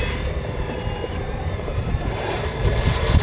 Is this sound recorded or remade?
remade